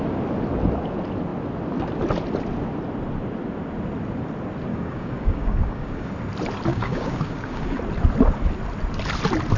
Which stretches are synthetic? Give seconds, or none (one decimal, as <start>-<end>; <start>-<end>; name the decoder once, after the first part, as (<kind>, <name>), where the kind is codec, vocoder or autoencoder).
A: 4.7-6.1 (codec, DAC); 6.7-7.8